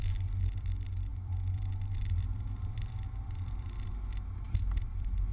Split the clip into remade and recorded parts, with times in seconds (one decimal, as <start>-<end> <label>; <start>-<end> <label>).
0.0-1.1 recorded; 1.1-4.3 remade; 4.3-5.3 recorded